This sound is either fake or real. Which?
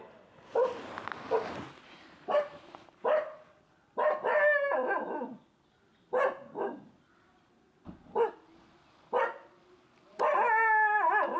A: real